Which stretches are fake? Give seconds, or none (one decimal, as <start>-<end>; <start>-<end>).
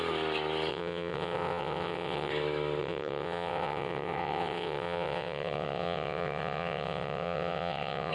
0.7-2.3; 2.8-8.1